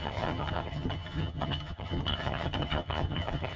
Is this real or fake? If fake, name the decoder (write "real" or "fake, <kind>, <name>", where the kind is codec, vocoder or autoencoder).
fake, vocoder, HiFi-GAN